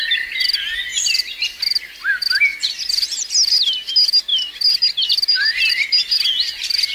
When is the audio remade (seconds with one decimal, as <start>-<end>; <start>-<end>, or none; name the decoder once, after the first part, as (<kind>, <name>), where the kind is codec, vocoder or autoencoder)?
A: 0.9-2.1 (vocoder, BigVGAN v2); 2.5-3.3; 4.3-5.7